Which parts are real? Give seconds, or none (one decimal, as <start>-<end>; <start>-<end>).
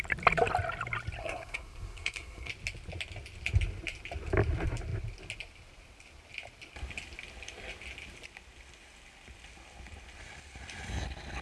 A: 0.0-1.2; 2.5-11.4